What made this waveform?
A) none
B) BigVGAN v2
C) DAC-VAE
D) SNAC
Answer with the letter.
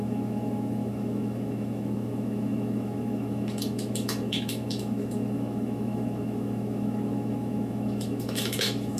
C